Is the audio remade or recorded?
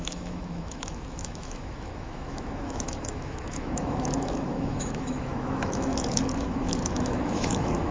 remade